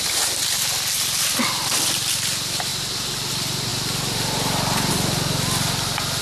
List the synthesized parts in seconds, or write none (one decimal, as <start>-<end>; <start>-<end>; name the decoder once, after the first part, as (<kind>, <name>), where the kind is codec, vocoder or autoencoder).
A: 2.7-3.3 (vocoder, BigVGAN v2)